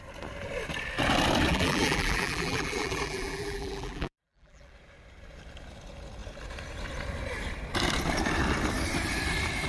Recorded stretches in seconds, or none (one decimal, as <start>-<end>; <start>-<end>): 0.0-1.5; 4.7-9.7